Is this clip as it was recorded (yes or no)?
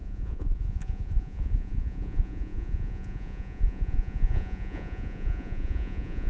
no